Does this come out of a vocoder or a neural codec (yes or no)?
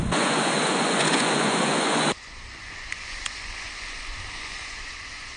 yes